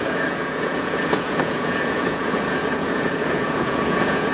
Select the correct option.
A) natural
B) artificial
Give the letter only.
B